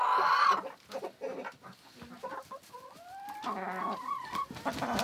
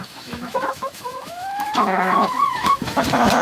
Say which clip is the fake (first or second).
second